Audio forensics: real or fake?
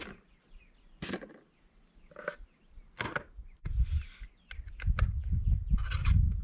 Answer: real